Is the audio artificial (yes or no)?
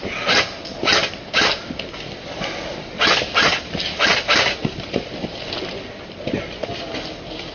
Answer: no